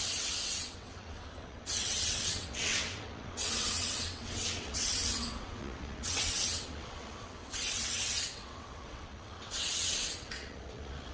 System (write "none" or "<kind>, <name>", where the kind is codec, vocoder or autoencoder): vocoder, WaveNeXt